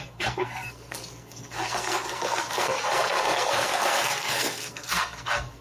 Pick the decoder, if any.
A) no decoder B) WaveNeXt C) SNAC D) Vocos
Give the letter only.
C